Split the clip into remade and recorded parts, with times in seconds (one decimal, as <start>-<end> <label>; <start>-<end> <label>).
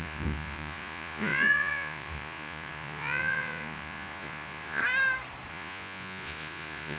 0.0-4.8 remade; 4.8-5.5 recorded; 5.5-7.0 remade